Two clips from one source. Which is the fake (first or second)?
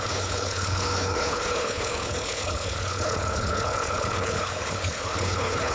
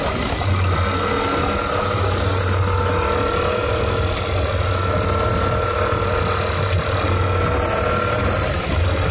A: first